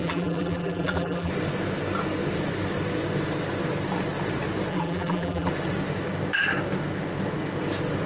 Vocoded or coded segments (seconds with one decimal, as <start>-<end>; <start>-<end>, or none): 0.0-1.3; 4.7-5.5